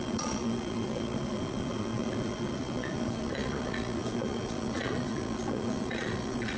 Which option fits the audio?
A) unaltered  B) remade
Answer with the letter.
B